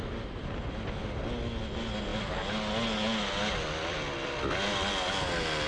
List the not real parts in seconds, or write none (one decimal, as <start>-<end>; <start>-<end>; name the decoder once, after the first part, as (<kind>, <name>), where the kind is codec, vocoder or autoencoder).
none